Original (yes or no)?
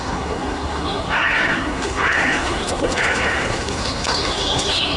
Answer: no